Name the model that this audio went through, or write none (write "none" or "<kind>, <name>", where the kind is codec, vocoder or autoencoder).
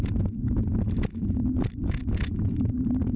none